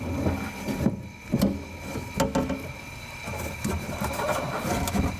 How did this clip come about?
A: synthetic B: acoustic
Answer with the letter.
B